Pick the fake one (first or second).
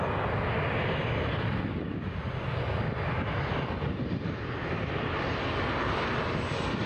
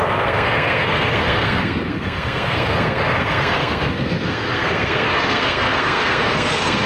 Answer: second